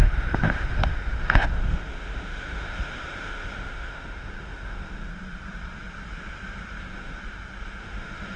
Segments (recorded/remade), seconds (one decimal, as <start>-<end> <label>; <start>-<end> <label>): 0.0-5.1 remade; 5.1-6.8 recorded; 6.8-7.2 remade; 7.2-7.8 recorded; 7.8-8.4 remade